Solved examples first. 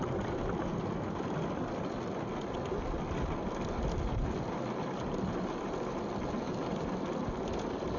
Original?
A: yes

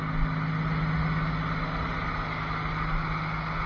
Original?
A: yes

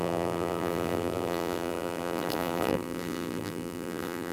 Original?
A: no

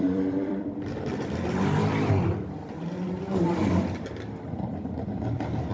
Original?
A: no